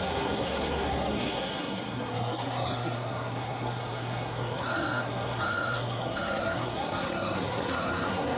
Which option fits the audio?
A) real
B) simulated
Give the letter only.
B